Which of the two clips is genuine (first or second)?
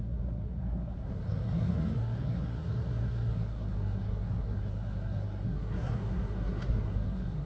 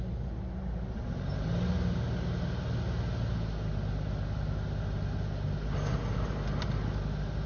second